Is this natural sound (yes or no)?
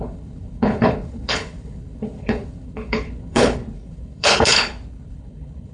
no